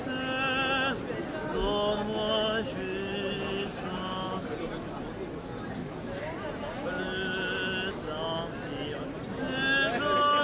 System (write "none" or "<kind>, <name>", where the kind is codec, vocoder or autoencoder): none